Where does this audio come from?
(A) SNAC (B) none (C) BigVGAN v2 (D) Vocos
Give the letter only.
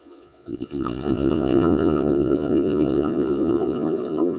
D